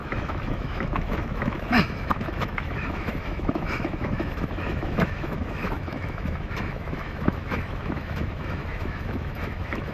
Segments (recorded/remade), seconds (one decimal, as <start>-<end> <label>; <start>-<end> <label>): 0.0-9.9 remade